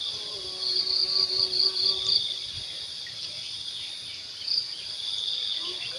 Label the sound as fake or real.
real